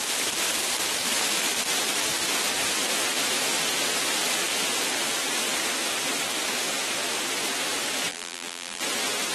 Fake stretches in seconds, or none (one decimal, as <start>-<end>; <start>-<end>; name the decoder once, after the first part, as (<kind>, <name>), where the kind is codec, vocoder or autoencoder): 8.1-8.8 (vocoder, BigVGAN v2)